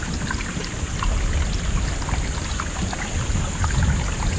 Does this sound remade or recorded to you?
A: recorded